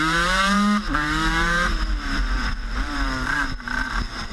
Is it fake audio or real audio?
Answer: fake